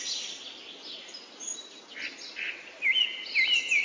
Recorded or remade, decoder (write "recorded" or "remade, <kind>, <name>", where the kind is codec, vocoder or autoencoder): recorded